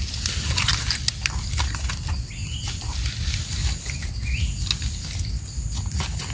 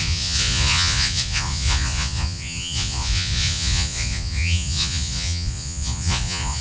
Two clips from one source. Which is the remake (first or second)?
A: second